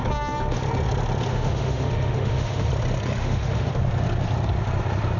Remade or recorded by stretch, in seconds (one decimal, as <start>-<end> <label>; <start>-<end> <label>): 0.0-1.3 recorded; 1.3-2.7 remade; 2.7-3.2 recorded; 3.2-3.7 remade; 3.7-5.2 recorded